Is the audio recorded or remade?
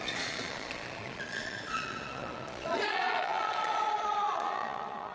remade